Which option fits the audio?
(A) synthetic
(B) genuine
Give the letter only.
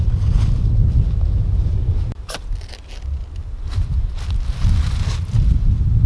B